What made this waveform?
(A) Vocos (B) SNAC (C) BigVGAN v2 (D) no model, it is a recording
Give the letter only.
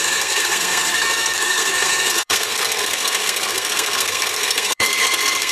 B